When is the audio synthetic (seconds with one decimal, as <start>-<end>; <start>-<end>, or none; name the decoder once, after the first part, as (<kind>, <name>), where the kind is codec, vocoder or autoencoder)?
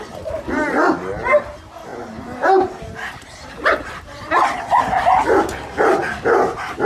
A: 1.9-4.8 (vocoder, BigVGAN v2); 6.0-6.9